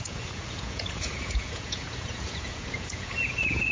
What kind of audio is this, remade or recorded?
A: remade